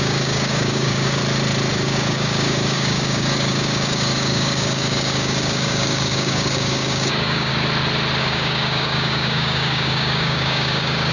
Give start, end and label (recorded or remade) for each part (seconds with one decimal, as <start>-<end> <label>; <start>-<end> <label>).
0.0-1.2 remade; 1.2-1.7 recorded; 1.7-7.5 remade; 7.5-8.2 recorded; 8.2-11.1 remade